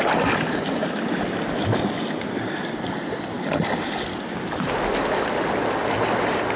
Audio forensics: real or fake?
real